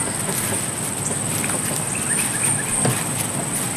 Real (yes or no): yes